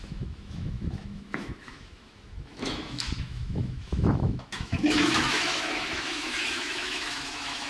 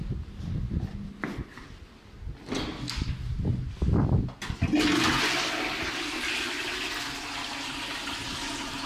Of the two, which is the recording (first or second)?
second